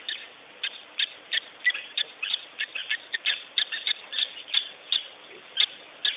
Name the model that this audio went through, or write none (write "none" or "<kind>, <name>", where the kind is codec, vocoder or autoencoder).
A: none